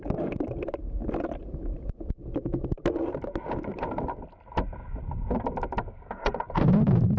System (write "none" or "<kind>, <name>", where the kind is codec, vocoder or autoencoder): none